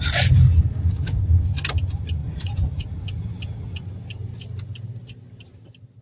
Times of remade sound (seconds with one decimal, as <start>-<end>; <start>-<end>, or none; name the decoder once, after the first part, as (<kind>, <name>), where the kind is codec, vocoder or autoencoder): 2.2-2.9 (vocoder, Vocos)